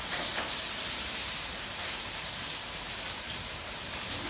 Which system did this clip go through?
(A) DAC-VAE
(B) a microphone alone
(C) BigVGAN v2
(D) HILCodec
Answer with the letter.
C